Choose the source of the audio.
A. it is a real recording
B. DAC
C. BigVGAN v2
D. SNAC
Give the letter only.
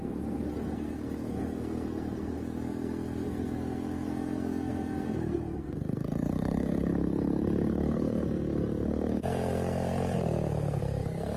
D